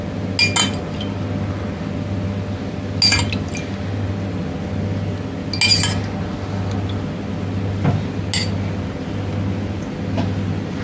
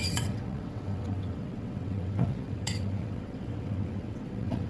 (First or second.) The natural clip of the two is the first